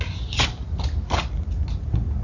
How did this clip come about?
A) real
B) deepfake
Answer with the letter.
A